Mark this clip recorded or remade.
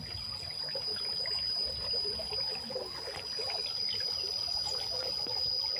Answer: recorded